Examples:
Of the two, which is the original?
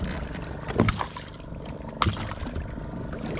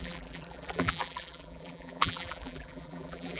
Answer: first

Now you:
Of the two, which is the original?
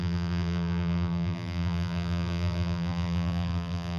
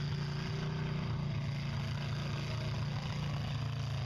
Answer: second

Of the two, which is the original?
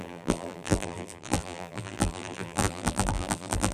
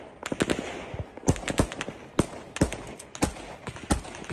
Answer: second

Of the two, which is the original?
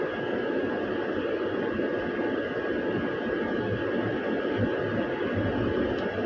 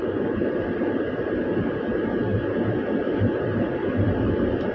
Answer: first